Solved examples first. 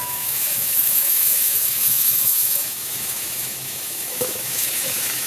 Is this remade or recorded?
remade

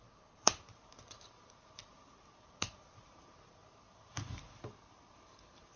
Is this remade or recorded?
remade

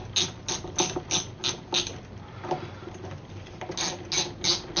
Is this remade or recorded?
recorded